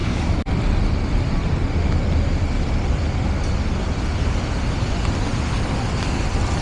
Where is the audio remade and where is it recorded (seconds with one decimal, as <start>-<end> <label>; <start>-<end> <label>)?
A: 0.0-6.6 recorded